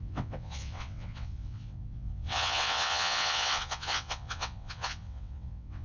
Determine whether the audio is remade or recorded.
remade